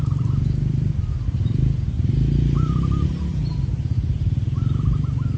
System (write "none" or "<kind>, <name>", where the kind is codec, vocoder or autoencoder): vocoder, BigVGAN v2